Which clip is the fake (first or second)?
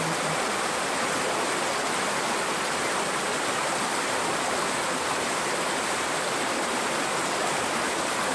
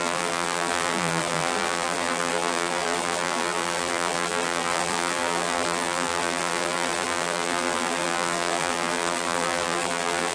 second